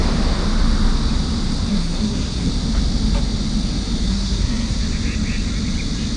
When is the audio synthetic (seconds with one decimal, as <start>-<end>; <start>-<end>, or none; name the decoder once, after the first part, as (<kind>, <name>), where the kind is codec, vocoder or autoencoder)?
1.7-2.5 (codec, SNAC); 4.1-4.8

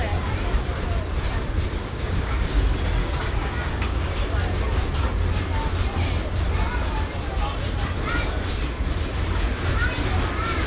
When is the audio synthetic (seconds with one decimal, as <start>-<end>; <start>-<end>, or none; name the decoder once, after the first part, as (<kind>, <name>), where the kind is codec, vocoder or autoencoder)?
1.8-2.5 (codec, DAC); 3.0-4.2

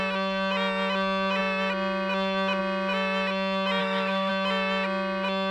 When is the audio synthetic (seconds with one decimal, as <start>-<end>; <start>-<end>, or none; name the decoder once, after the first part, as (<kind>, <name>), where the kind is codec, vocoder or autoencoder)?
3.8-4.3 (autoencoder, DAC-VAE)

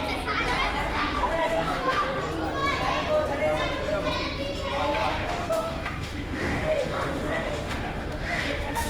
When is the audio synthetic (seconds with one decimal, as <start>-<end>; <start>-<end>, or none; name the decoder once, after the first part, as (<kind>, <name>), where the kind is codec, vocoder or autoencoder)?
0.9-2.2 (autoencoder, DAC-VAE); 5.1-8.9

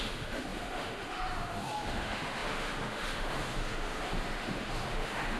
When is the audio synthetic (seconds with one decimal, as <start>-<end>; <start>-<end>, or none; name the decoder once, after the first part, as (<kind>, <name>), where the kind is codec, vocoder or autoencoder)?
0.0-5.4 (autoencoder, DAC-VAE)

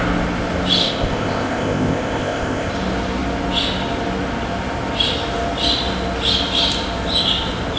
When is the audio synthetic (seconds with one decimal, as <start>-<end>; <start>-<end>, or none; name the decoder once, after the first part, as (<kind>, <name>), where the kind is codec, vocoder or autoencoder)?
0.8-2.7 (codec, ZipCodec)